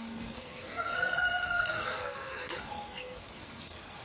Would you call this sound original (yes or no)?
no